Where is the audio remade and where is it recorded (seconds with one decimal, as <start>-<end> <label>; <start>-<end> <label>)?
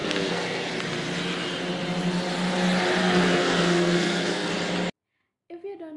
0.0-0.7 remade; 0.7-3.0 recorded; 3.0-4.5 remade; 4.5-6.0 recorded